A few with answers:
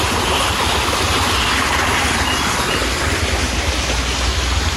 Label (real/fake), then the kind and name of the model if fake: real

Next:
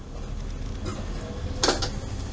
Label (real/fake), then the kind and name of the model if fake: real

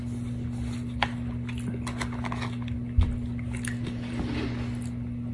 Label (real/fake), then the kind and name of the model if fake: real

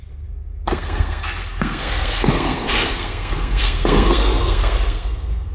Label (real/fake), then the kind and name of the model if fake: fake, codec, SNAC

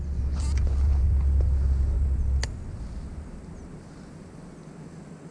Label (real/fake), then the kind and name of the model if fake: real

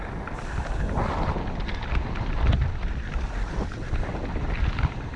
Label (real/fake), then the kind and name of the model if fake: real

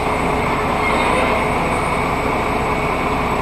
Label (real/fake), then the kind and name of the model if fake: real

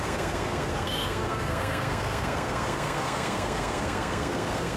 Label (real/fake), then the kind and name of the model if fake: fake, codec, SNAC